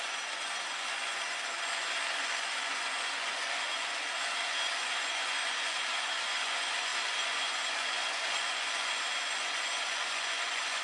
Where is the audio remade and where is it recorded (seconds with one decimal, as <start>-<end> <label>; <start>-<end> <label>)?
0.0-10.8 remade